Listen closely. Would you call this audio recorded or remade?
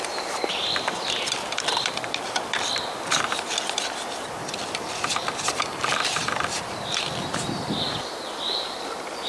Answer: remade